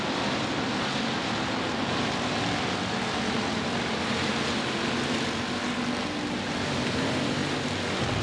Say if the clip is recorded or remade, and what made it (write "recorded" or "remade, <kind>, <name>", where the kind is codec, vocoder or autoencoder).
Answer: recorded